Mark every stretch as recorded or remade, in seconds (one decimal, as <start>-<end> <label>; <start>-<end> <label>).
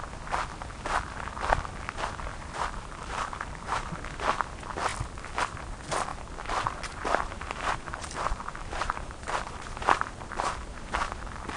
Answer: 0.0-2.3 recorded; 2.3-3.9 remade; 3.9-6.1 recorded; 6.1-10.7 remade; 10.7-11.6 recorded